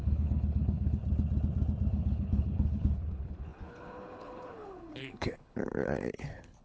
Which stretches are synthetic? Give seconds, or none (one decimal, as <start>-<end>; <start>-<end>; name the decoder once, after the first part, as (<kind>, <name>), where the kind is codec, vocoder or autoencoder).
0.0-1.0 (codec, HILCodec); 1.9-6.6